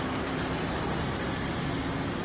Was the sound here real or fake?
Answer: real